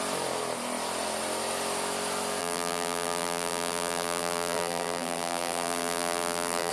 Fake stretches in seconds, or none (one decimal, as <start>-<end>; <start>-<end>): 2.4-6.7